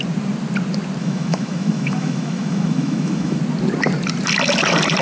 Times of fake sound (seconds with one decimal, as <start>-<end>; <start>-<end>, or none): 1.0-3.4